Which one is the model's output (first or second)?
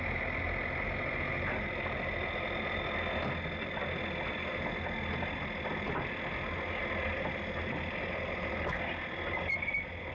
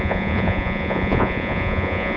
second